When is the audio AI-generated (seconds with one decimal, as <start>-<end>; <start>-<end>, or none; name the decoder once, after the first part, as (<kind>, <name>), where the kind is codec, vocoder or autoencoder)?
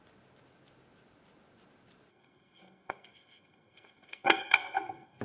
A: 2.1-5.2 (codec, SNAC)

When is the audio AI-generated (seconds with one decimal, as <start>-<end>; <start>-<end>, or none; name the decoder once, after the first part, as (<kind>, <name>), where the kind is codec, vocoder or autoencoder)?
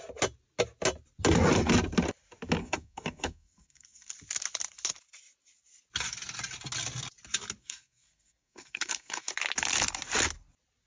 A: 2.6-4.1 (codec, SNAC); 7.6-9.3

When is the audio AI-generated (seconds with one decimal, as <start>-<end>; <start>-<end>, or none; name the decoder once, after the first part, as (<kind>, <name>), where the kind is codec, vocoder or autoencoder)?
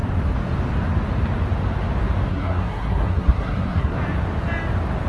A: 2.3-4.0 (codec, SNAC)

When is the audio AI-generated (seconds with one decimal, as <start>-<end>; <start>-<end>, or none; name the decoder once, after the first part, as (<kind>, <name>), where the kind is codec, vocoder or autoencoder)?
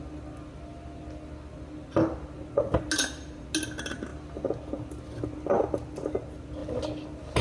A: none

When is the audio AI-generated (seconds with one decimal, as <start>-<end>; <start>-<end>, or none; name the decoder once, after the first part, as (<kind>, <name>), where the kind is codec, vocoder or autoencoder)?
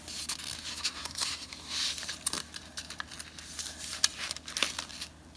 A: 0.7-1.5 (codec, SNAC)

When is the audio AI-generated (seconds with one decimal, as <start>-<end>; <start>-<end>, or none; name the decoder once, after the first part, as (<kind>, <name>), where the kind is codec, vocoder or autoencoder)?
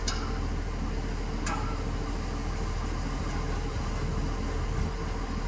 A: none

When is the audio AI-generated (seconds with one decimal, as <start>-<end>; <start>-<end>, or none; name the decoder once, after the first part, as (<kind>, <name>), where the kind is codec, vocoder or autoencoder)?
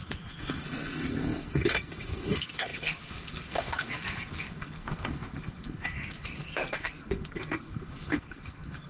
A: 0.0-8.9 (codec, SNAC)